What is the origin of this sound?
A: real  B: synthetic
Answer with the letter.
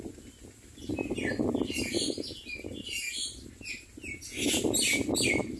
A